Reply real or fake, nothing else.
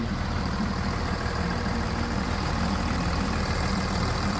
fake